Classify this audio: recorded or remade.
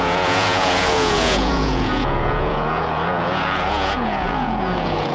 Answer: remade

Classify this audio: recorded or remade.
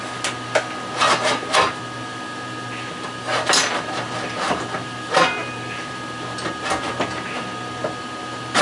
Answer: recorded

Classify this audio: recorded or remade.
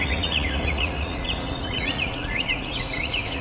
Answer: remade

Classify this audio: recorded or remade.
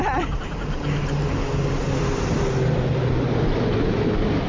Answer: recorded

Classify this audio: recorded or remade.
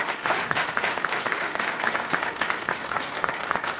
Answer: remade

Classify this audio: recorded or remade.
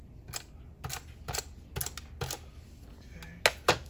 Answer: recorded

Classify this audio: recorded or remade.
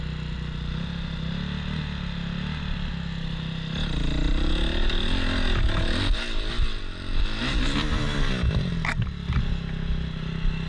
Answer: recorded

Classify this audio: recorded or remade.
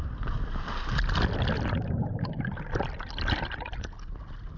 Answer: recorded